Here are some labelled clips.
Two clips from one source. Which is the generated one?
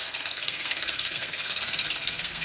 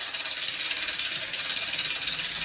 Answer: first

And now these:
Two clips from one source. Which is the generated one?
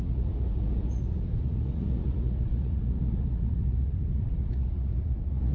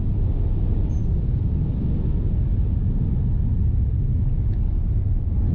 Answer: first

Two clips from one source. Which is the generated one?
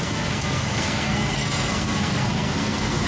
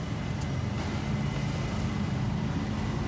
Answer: first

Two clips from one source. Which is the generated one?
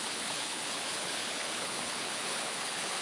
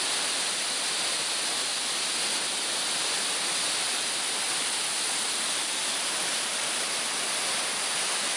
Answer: first